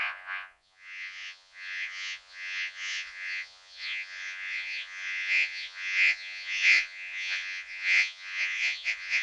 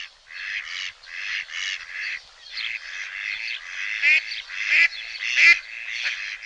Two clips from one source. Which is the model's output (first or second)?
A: first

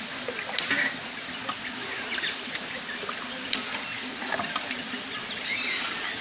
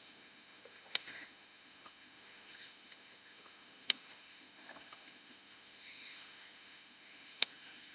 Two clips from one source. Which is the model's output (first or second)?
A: second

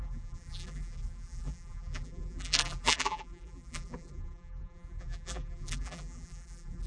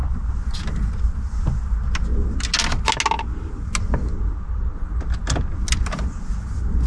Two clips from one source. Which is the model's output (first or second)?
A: first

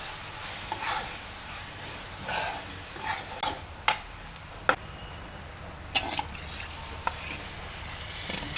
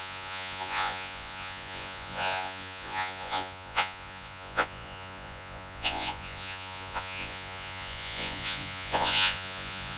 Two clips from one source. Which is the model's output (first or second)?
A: second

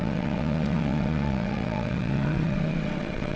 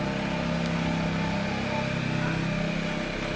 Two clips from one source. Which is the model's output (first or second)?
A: first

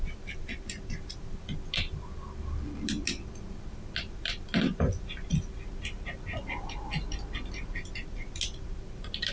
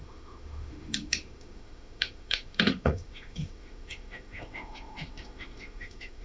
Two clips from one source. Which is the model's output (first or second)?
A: second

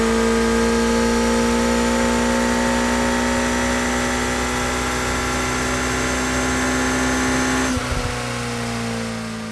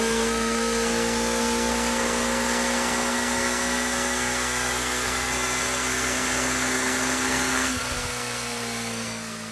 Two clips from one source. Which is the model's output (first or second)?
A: second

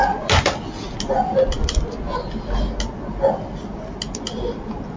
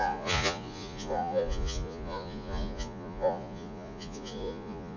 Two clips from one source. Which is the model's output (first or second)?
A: second